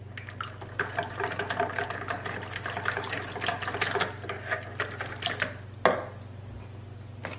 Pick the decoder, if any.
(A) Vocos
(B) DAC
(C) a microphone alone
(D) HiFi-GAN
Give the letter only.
C